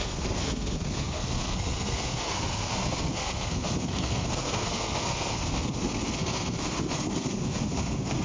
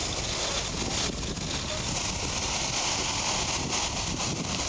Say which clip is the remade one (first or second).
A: first